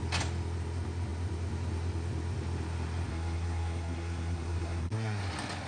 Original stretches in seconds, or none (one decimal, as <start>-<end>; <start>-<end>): 0.0-3.1; 5.2-5.7